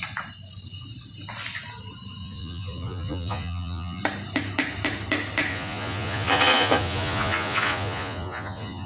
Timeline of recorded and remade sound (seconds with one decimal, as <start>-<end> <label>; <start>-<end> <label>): 0.0-2.2 recorded; 2.2-4.0 remade; 4.0-5.5 recorded; 5.5-8.9 remade